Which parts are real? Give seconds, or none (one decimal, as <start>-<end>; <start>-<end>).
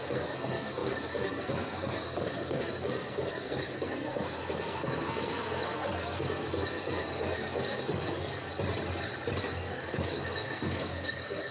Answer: 8.5-9.4